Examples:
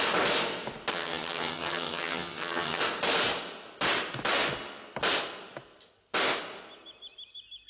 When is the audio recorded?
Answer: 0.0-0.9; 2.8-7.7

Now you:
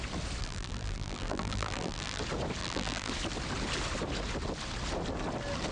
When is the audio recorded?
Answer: 0.0-0.4; 2.2-2.6; 3.1-5.7